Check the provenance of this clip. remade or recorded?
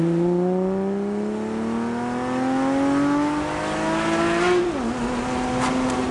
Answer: recorded